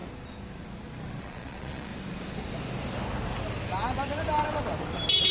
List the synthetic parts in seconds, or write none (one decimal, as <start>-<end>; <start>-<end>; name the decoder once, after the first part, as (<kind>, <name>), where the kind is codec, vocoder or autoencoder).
1.2-1.9 (vocoder, Vocos)